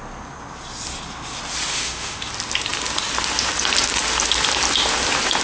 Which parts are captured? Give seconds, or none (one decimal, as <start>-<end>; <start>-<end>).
0.0-1.7; 2.3-5.4